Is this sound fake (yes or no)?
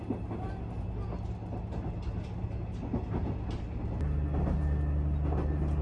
no